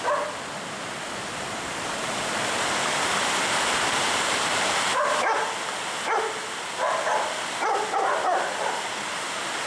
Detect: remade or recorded remade